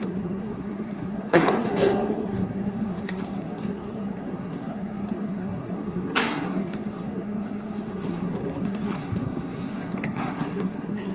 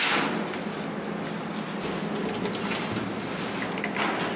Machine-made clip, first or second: first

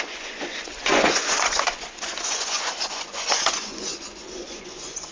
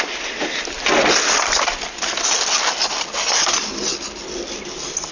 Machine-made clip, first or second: first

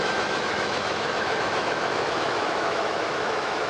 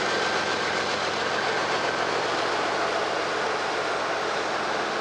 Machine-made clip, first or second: first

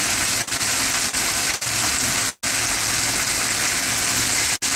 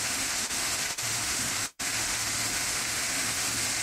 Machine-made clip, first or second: second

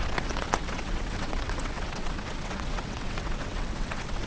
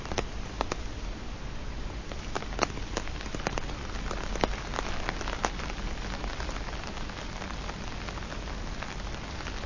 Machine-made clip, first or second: first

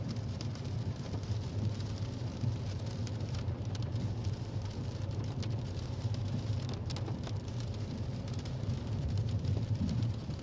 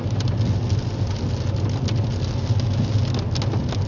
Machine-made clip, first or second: first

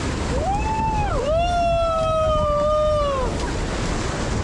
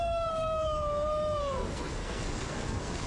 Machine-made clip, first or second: second